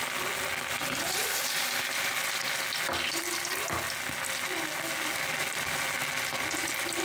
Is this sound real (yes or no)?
yes